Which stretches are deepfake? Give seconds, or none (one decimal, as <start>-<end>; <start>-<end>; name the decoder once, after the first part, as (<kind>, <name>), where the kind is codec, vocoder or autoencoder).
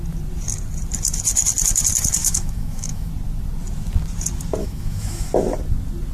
2.2-3.1 (autoencoder, DAC-VAE); 4.6-5.3